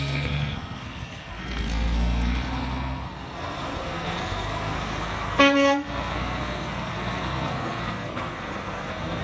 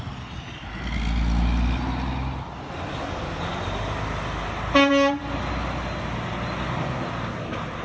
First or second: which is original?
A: second